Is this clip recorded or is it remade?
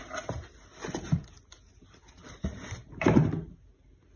recorded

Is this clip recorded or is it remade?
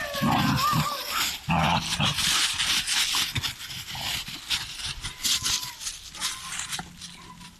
recorded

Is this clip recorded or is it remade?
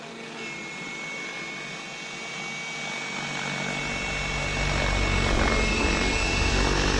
recorded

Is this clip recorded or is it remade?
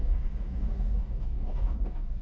remade